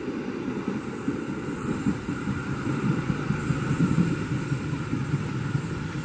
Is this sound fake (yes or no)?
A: no